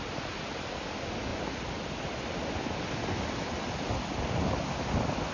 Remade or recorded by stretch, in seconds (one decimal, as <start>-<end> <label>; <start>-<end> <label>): 0.0-5.3 recorded